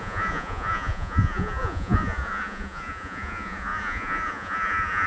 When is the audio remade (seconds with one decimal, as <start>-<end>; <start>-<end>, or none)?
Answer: 0.0-5.1